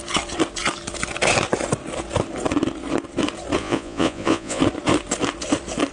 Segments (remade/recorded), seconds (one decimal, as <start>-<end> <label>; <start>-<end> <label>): 0.0-3.6 recorded; 3.6-4.6 remade; 4.6-5.9 recorded